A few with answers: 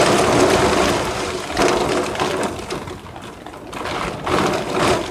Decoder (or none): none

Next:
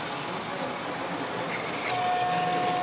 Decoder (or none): none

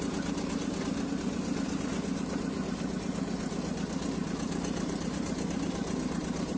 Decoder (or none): none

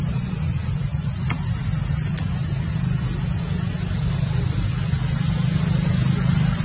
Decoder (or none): none